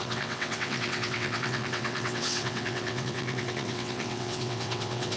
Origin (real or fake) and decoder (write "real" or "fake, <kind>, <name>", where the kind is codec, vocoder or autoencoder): fake, vocoder, WaveNeXt